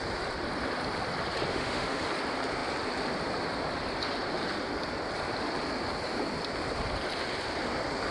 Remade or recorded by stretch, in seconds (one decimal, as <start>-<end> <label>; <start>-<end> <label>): 0.0-1.5 recorded; 1.5-2.1 remade; 2.1-8.1 recorded

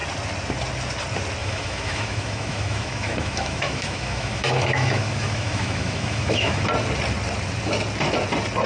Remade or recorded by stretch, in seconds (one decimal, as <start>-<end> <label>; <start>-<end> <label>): 0.0-1.4 recorded; 1.4-6.6 remade; 6.6-8.7 recorded

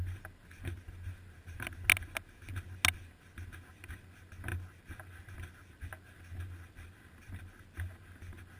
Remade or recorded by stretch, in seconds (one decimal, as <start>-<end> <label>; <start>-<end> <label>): 0.0-8.6 recorded